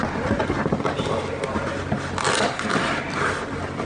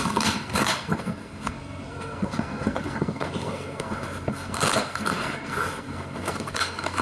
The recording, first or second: first